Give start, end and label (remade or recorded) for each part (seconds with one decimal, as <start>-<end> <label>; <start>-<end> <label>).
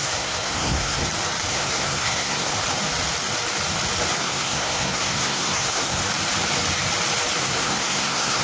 0.0-1.0 remade; 1.0-1.5 recorded; 1.5-2.5 remade; 2.5-4.2 recorded; 4.2-6.0 remade; 6.0-7.4 recorded; 7.4-8.4 remade